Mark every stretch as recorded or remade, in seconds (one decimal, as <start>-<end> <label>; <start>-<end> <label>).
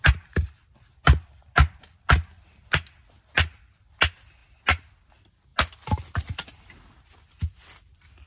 0.0-8.3 recorded